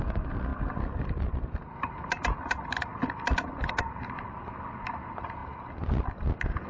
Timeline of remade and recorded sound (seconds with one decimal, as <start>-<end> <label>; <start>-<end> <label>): 0.0-6.7 recorded